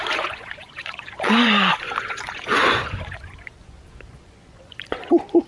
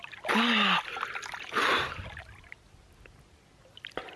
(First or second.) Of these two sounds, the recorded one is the second